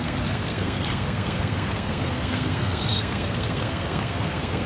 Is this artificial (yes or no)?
yes